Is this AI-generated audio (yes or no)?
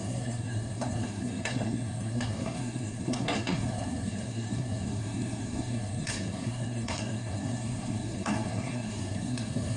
yes